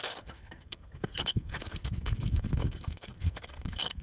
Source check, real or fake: fake